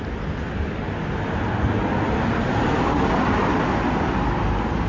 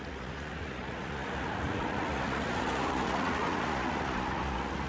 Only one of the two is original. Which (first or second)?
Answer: first